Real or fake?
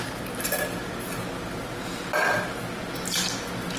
real